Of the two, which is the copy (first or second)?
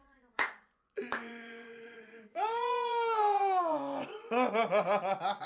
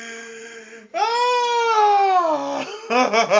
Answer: first